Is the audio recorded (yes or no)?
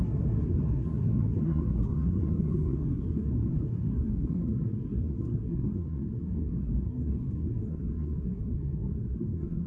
no